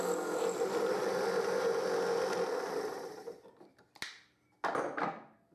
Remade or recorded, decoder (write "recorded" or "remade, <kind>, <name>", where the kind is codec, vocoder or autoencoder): recorded